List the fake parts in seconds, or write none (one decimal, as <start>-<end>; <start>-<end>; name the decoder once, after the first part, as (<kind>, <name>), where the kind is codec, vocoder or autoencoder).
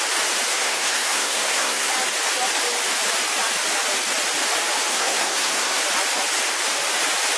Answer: 0.5-1.9 (codec, SNAC); 4.9-5.8